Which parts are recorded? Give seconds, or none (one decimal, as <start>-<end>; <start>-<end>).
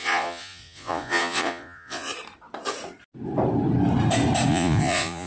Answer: 2.1-4.5